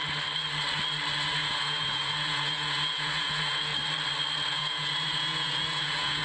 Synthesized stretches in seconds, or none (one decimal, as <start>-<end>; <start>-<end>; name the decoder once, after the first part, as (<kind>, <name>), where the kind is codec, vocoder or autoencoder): 1.4-3.7 (vocoder, Vocos); 4.5-6.2